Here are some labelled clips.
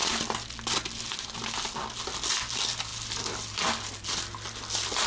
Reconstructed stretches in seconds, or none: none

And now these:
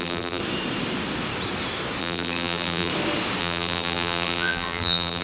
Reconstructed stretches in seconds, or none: 0.0-0.4 (vocoder, BigVGAN v2); 2.0-2.9; 3.4-5.2